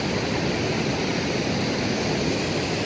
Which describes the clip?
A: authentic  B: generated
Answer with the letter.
A